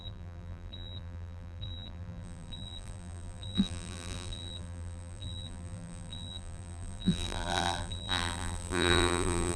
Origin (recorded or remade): remade